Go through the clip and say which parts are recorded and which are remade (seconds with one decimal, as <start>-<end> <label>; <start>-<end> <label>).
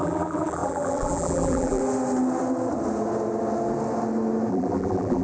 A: 0.0-1.8 remade; 1.8-4.5 recorded; 4.5-5.2 remade